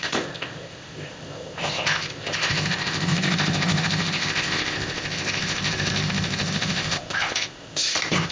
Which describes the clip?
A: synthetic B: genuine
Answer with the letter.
A